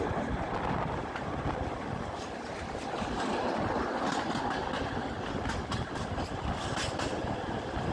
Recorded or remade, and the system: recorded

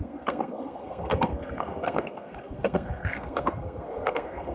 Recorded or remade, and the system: remade, codec, SNAC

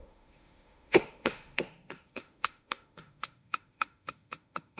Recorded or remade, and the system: remade, autoencoder, DAC-VAE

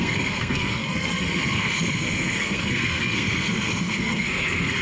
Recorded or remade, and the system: remade, codec, SNAC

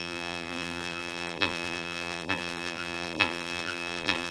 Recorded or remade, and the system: remade, vocoder, BigVGAN v2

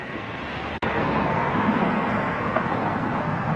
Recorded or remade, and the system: remade, codec, SNAC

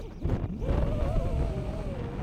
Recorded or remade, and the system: recorded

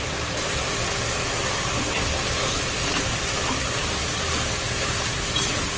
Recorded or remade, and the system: recorded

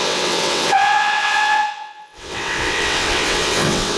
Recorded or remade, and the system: remade, vocoder, WaveNeXt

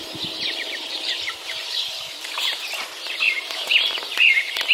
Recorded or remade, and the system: remade, vocoder, BigVGAN v2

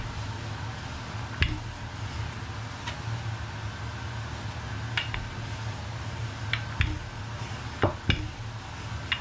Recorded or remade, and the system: recorded